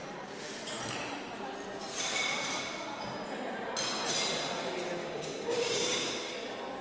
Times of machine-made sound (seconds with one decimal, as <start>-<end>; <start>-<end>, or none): 5.0-6.3

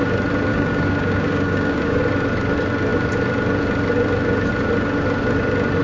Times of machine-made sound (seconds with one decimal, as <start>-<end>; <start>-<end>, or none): 0.5-2.0